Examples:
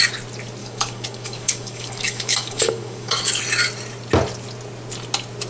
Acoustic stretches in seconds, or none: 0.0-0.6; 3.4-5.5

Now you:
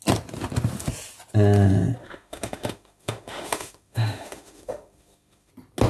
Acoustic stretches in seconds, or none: 0.0-2.0; 5.5-5.9

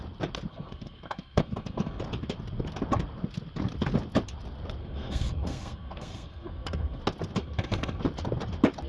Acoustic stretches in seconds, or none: 0.0-0.5; 2.0-4.8; 7.0-7.4; 8.0-8.9

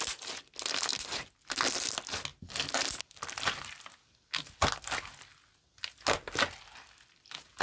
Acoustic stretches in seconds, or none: 0.0-7.6

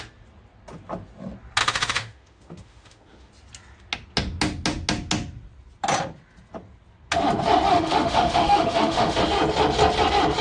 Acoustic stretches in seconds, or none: 0.0-1.6; 3.3-7.7; 9.2-10.4